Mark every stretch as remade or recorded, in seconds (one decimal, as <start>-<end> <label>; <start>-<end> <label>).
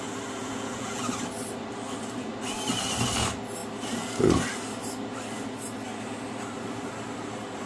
0.0-0.4 recorded; 0.4-1.0 remade; 1.0-7.7 recorded